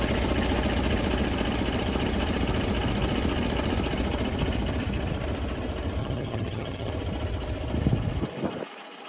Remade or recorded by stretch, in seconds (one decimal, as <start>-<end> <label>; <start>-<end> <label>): 0.0-6.0 recorded; 6.0-6.9 remade; 6.9-9.1 recorded